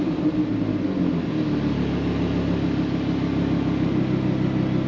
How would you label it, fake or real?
real